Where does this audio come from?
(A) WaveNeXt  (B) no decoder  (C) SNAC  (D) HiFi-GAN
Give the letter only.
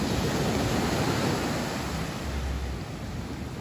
B